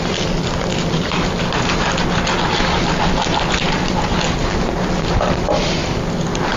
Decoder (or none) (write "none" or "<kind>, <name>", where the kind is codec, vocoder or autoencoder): none